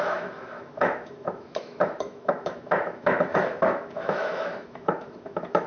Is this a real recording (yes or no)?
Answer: no